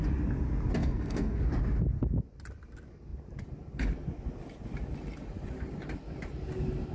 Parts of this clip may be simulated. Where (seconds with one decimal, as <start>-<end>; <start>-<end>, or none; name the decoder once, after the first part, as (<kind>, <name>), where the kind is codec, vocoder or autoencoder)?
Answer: 0.8-1.4 (codec, SNAC)